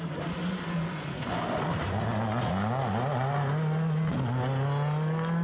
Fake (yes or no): no